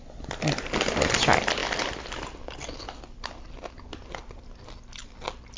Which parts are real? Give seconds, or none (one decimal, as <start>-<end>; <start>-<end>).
0.0-5.6